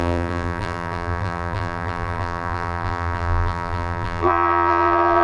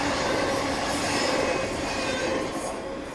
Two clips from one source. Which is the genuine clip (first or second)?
second